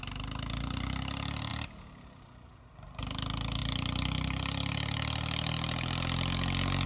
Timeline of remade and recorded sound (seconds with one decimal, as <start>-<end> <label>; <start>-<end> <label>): 0.0-6.9 recorded